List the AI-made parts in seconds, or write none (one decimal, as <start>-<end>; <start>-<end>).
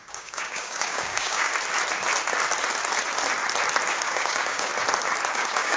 0.0-1.5; 3.9-4.7; 5.3-5.8